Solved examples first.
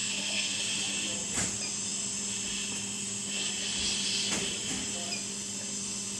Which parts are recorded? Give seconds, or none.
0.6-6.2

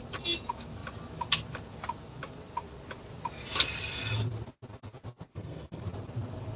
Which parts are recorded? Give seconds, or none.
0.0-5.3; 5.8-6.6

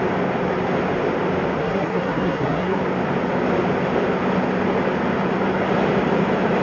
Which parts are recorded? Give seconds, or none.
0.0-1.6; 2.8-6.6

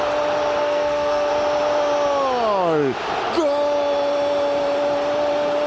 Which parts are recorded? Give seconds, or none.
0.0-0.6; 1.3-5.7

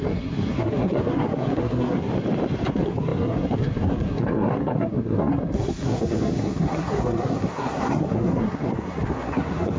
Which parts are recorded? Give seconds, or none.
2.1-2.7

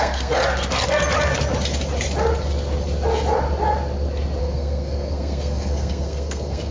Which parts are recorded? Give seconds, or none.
0.4-4.4